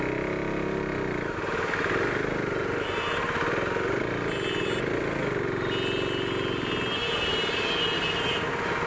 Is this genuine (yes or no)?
yes